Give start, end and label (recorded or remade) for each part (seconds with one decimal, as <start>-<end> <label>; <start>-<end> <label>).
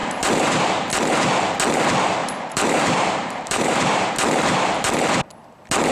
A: 0.0-0.6 remade; 0.6-2.2 recorded; 2.2-4.1 remade; 4.1-5.9 recorded